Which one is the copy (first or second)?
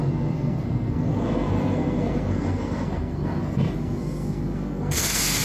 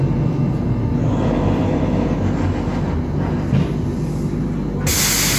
first